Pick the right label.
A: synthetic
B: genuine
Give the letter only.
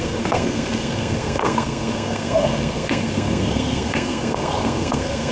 A